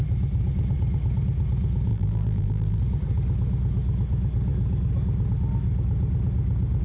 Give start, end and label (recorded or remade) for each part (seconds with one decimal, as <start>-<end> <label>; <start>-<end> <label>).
0.0-1.9 recorded; 1.9-2.8 remade; 2.8-6.8 recorded